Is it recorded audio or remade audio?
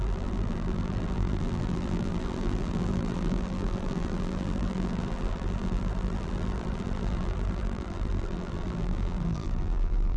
remade